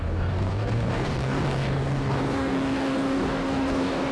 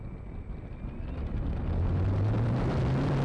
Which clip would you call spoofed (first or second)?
first